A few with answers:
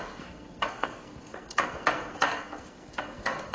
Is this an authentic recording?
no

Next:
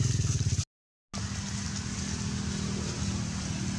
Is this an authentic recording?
yes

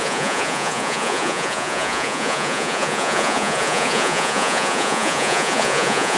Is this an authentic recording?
no